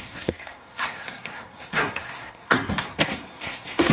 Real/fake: fake